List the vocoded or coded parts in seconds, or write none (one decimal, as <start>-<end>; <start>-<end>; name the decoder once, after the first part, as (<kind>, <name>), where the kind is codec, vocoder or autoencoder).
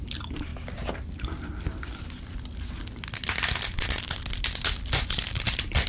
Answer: none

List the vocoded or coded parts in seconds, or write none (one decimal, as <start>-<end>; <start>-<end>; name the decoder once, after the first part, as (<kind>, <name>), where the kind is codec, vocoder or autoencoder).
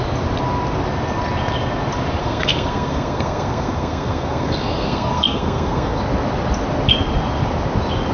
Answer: 2.2-6.0 (codec, SNAC)